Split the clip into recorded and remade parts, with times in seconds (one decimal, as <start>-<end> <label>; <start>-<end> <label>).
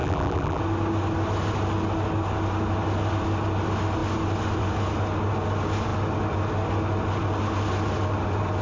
0.0-0.6 remade; 0.6-8.6 recorded